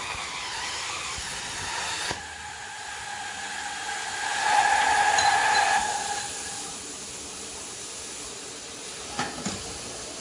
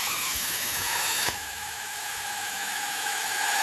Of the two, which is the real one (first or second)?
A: first